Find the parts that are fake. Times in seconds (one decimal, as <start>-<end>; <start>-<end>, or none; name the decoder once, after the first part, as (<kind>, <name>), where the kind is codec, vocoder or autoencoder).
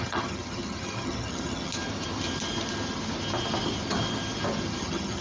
0.0-1.7 (vocoder, HiFi-GAN); 4.8-5.2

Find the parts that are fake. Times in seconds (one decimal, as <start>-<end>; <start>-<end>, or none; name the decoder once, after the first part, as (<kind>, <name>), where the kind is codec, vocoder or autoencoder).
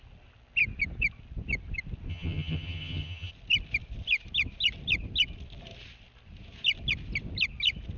2.1-3.3 (vocoder, HiFi-GAN)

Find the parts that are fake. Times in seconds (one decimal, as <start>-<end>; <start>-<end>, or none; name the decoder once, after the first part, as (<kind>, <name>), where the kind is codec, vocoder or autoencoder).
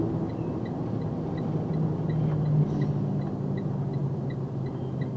none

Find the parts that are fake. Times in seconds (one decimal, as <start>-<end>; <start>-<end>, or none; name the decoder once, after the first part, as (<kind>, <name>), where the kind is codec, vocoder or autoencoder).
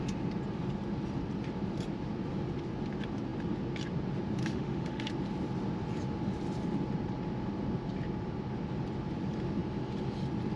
4.4-5.1 (autoencoder, DAC-VAE)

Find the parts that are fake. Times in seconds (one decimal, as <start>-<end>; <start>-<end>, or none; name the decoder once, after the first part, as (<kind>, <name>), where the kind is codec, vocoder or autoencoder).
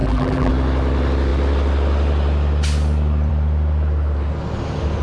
0.0-0.5 (vocoder, BigVGAN v2)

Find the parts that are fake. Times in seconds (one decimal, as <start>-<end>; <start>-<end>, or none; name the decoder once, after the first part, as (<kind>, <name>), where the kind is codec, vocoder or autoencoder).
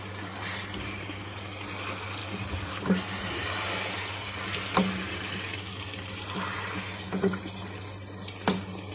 none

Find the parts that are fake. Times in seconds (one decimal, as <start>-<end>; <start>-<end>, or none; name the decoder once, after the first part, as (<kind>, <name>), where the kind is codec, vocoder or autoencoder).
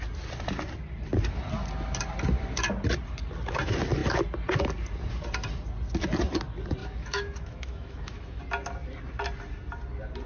6.8-8.4 (autoencoder, DAC-VAE)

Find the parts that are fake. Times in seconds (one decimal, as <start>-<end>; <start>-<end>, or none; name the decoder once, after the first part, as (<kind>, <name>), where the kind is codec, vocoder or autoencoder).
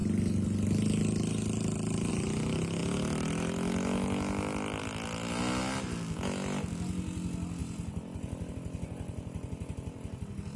none